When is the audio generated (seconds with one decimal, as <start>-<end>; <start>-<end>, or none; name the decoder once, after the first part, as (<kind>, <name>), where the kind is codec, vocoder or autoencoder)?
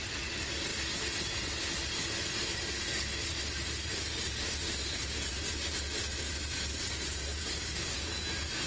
7.3-7.9 (codec, DAC)